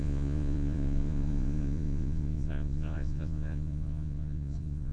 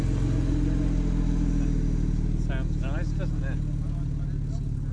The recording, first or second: second